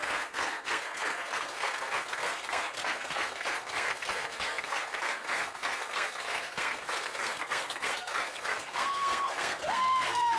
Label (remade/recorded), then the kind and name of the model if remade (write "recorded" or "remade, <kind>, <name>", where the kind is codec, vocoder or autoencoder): remade, codec, SNAC